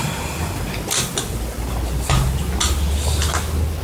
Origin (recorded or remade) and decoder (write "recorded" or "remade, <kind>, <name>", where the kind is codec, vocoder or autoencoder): recorded